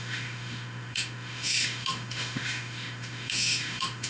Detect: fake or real fake